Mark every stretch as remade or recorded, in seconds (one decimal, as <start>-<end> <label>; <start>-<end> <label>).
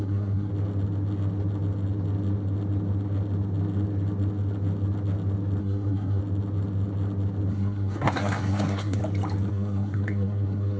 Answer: 0.0-0.5 remade; 0.5-5.6 recorded; 5.6-6.2 remade; 6.2-7.5 recorded; 7.5-9.0 remade; 9.0-9.5 recorded; 9.5-10.8 remade